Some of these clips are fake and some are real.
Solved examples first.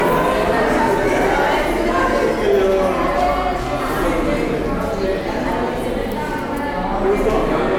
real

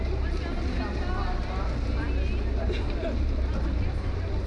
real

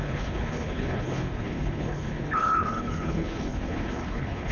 fake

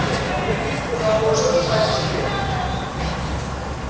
real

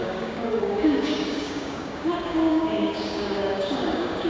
fake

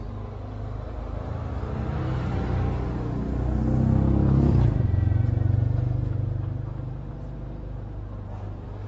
real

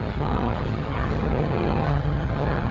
fake